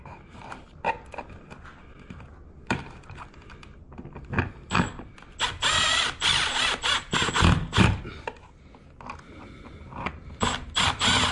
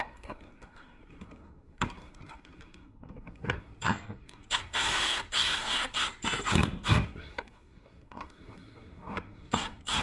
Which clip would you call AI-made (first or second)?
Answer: second